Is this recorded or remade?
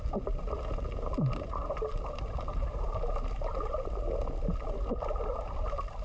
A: recorded